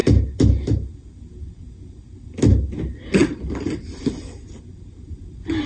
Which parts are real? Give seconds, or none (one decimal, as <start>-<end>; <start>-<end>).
0.0-3.2; 4.0-5.7